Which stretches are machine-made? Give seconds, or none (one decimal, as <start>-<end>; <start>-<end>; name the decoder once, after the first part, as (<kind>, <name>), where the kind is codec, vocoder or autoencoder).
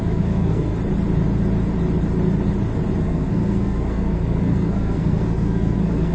0.0-0.7 (codec, SNAC); 3.0-6.1